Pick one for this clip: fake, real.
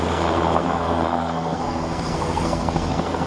fake